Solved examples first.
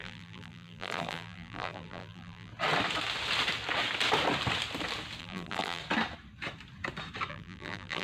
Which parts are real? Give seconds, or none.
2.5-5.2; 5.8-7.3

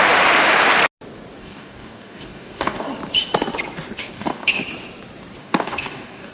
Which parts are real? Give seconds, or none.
0.0-1.4; 2.9-4.0; 4.6-5.4

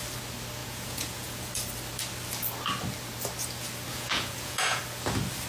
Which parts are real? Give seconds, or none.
0.0-0.6; 1.5-3.9; 4.8-5.5